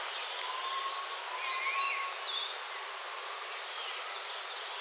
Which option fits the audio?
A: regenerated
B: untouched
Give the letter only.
B